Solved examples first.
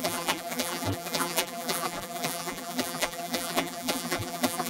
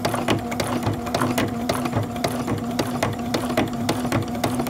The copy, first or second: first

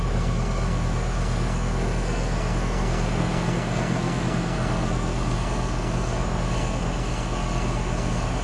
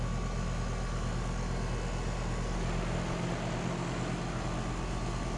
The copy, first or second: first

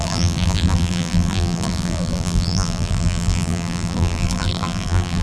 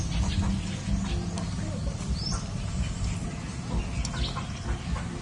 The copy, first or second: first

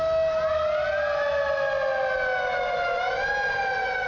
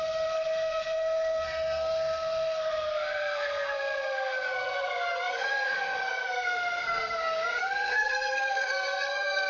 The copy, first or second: second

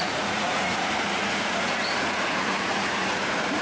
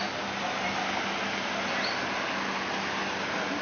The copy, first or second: first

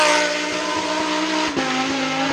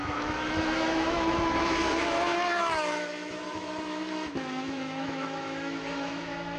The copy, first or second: second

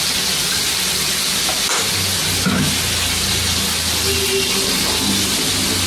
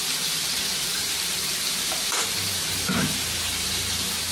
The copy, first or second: second